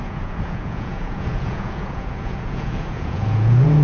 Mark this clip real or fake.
fake